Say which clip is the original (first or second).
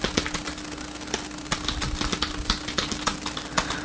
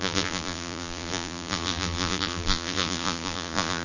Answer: first